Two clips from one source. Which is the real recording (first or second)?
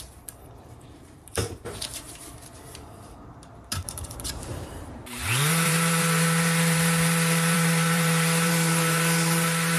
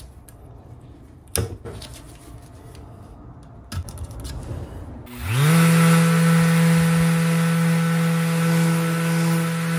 second